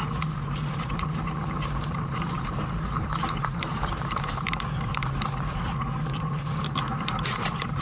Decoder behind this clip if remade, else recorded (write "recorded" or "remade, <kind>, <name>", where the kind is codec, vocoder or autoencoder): remade, vocoder, BigVGAN v2